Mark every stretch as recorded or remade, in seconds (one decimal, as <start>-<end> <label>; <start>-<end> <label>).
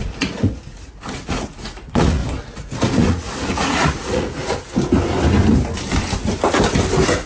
0.0-2.2 remade; 2.2-3.0 recorded; 3.0-4.4 remade; 4.4-7.3 recorded